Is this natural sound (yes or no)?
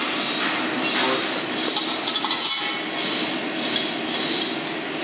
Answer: yes